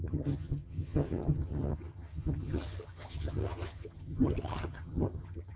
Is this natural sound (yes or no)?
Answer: no